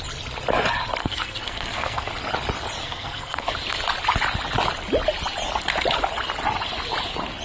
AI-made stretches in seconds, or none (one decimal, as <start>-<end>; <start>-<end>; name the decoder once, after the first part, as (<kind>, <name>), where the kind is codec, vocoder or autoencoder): 1.0-2.1 (codec, SNAC); 2.8-3.5